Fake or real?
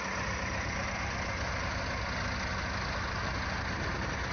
real